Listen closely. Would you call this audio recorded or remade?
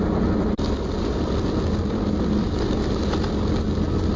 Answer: recorded